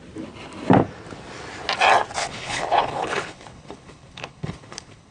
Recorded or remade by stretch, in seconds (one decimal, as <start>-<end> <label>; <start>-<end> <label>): 0.0-2.2 recorded; 2.2-5.1 remade